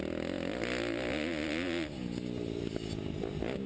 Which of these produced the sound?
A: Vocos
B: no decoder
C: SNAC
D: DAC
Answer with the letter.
B